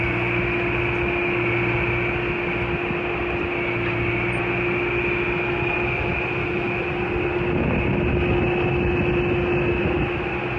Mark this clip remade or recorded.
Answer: recorded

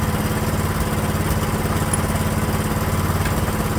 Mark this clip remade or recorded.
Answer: recorded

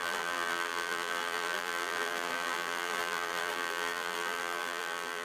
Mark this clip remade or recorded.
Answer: remade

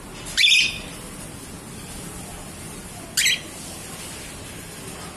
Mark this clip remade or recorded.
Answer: recorded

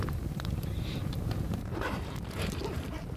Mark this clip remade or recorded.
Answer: remade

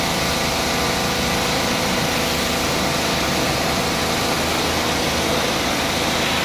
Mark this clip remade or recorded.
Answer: recorded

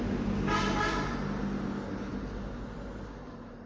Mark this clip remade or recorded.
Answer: recorded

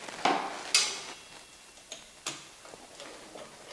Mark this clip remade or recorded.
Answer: recorded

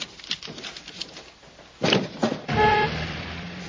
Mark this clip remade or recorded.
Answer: remade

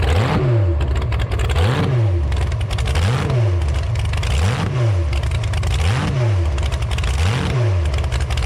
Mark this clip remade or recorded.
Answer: recorded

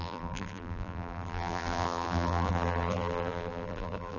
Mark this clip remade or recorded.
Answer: remade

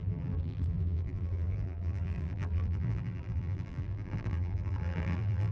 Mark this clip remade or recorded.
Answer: remade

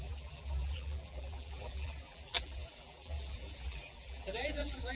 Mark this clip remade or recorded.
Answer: remade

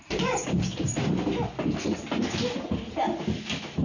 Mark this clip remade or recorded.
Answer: recorded